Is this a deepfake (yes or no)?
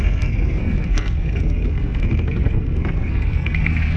yes